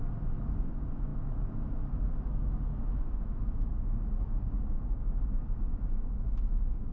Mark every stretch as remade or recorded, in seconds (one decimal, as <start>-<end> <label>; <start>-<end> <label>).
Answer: 0.0-1.1 recorded; 1.1-1.8 remade; 1.8-2.7 recorded; 2.7-6.9 remade